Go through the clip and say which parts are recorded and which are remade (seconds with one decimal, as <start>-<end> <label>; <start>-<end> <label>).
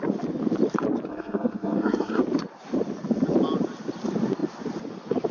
0.0-1.1 recorded; 1.1-2.2 remade; 2.2-5.3 recorded